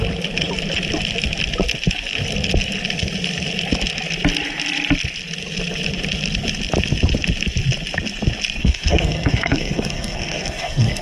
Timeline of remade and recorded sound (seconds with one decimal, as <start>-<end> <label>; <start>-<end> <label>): 0.0-8.6 recorded; 8.6-11.0 remade